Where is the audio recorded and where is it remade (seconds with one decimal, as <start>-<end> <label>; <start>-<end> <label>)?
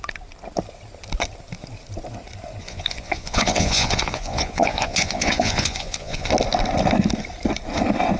0.0-2.6 recorded; 2.6-6.3 remade; 6.3-8.2 recorded